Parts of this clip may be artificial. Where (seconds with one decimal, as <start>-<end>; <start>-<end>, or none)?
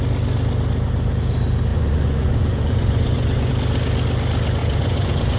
1.7-3.5; 4.6-5.4